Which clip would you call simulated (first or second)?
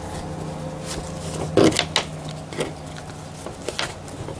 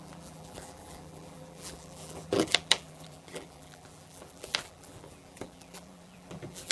second